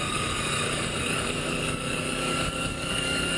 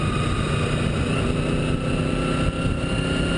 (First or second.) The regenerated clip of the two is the first